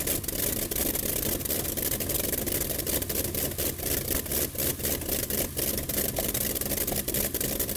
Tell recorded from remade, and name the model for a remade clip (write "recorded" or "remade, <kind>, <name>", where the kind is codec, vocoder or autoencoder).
recorded